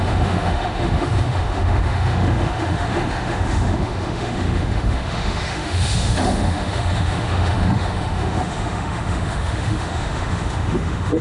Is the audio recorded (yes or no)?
no